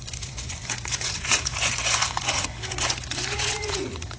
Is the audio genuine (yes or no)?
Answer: no